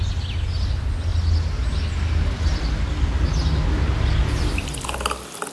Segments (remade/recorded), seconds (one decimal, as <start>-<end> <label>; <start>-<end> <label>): 0.0-5.5 recorded

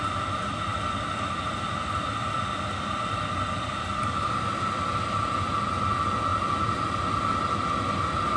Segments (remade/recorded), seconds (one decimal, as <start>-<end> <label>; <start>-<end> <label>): 0.0-8.4 recorded

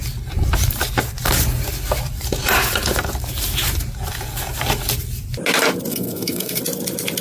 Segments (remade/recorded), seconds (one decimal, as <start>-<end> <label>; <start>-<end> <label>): 0.0-5.9 recorded; 5.9-6.6 remade; 6.6-7.2 recorded

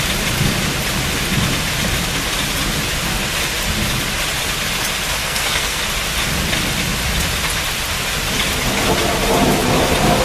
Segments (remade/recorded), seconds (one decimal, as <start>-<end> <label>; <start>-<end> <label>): 0.0-5.2 recorded; 5.2-5.8 remade; 5.8-10.2 recorded

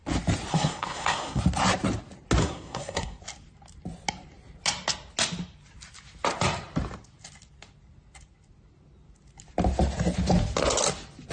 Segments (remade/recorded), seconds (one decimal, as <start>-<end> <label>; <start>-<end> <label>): 0.0-0.5 recorded; 0.5-1.4 remade; 1.4-2.4 recorded; 2.4-3.2 remade; 3.2-11.3 recorded